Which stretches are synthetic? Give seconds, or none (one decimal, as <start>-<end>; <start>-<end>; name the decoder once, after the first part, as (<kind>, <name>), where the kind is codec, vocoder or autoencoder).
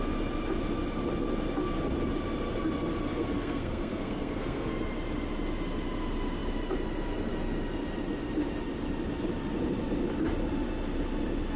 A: 3.1-4.7 (codec, SNAC)